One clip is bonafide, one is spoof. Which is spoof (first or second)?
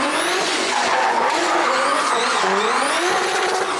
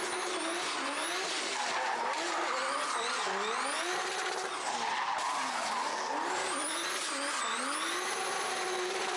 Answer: first